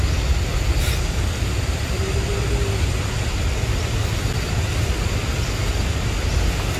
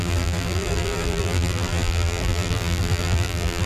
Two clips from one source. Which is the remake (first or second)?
second